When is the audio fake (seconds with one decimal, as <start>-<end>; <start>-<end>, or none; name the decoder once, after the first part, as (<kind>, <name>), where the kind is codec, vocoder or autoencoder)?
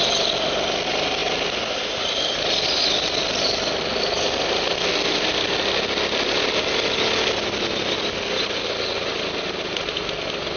none